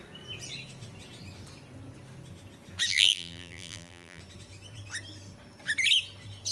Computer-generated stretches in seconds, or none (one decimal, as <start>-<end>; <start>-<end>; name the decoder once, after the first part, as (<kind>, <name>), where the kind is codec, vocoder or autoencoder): 2.9-4.2 (vocoder, BigVGAN v2)